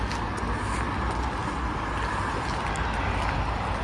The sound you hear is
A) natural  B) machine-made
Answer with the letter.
A